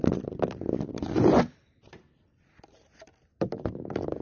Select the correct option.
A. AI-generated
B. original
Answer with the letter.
B